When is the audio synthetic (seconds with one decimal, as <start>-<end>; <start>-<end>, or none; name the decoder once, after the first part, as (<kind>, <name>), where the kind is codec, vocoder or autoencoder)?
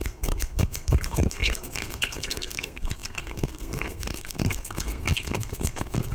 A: 0.0-6.1 (codec, SNAC)